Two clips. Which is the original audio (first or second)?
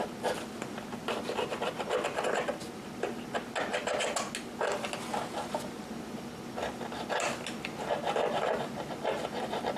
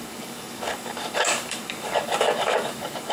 first